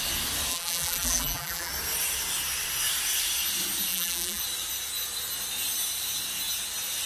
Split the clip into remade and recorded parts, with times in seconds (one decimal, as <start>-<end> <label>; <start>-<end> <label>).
0.0-0.5 recorded; 0.5-1.7 remade; 1.7-3.9 recorded; 3.9-4.4 remade; 4.4-7.1 recorded

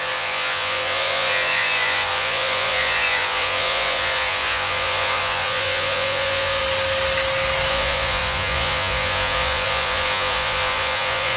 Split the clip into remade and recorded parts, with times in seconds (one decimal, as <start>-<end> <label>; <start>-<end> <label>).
0.0-6.6 remade; 6.6-7.7 recorded; 7.7-11.4 remade